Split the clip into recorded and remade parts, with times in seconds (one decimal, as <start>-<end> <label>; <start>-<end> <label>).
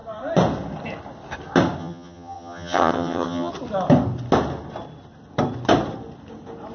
0.0-1.8 recorded; 1.8-3.5 remade; 3.5-6.7 recorded